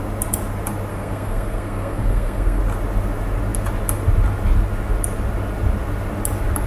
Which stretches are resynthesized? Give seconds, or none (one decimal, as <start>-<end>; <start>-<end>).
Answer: 0.9-2.6